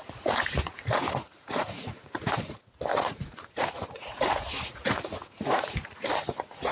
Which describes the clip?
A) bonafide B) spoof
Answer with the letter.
B